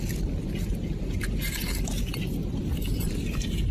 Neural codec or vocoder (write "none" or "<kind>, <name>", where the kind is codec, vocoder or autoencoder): none